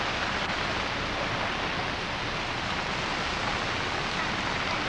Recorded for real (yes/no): yes